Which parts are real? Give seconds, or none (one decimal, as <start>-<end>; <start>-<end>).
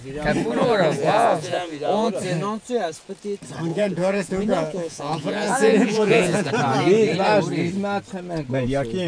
0.0-0.6; 2.1-3.7; 6.5-9.1